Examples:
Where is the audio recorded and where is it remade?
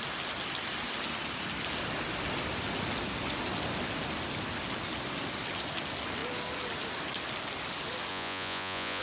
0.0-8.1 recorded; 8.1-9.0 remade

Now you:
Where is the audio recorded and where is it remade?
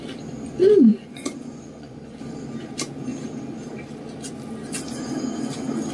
0.0-0.9 recorded; 0.9-2.2 remade; 2.2-5.9 recorded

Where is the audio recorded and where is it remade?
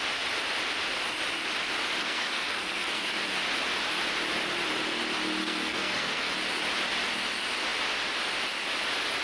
0.0-2.0 recorded; 2.0-3.1 remade; 3.1-5.4 recorded; 5.4-6.3 remade; 6.3-9.2 recorded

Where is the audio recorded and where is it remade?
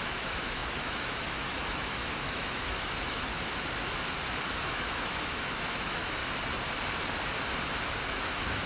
0.0-3.3 remade; 3.3-4.7 recorded; 4.7-6.2 remade; 6.2-8.1 recorded; 8.1-8.7 remade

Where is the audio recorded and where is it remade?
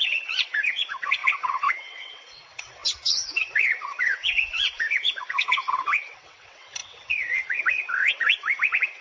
0.0-9.0 remade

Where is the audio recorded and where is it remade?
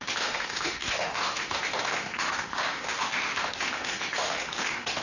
0.0-5.0 remade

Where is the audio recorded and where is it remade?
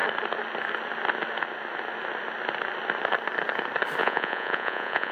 0.0-4.0 recorded; 4.0-5.1 remade